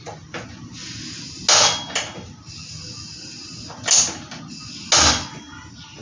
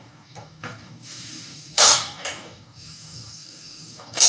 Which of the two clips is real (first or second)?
first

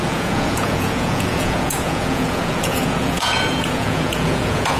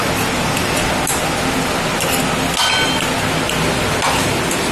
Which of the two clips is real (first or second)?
second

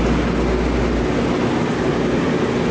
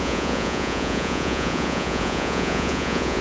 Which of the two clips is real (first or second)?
first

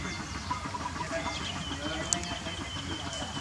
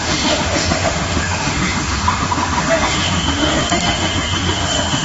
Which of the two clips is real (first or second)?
first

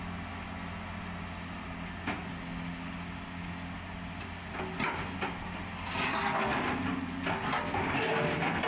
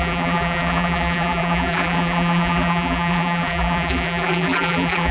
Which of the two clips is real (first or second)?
first